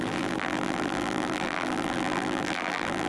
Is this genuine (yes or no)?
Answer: no